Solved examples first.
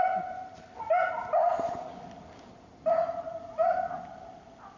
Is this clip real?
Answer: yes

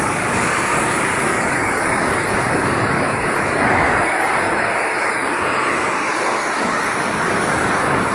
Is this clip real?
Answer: no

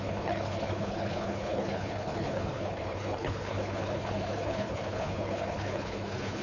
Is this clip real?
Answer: no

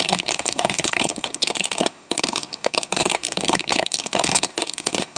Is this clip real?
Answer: no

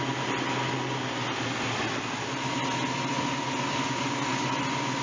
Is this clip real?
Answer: yes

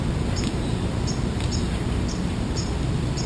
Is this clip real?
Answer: yes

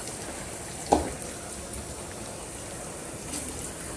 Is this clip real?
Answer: yes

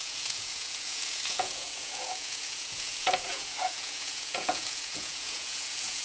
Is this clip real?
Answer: no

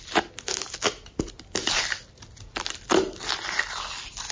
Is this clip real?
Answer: yes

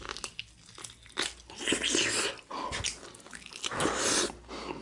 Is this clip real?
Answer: yes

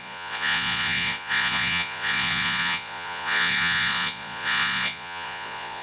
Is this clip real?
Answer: no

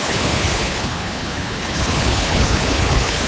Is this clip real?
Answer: no